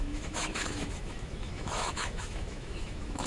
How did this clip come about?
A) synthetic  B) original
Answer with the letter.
A